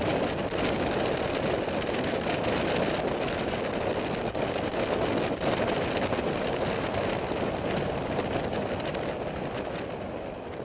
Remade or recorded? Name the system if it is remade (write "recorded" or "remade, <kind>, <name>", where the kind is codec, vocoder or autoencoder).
recorded